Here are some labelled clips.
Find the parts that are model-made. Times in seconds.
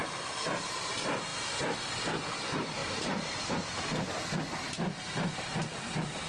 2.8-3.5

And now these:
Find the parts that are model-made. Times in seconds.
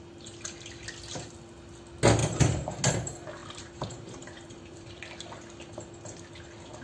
2.2-2.8; 3.4-5.0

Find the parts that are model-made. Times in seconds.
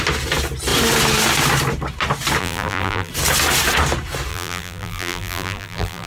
2.4-3.1; 4.3-6.1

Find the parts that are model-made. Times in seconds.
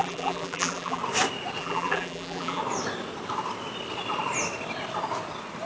0.0-1.0; 1.6-2.6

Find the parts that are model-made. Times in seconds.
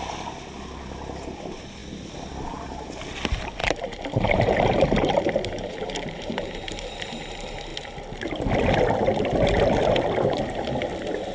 3.6-7.1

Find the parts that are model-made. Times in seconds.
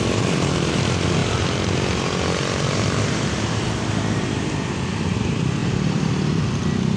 5.6-6.4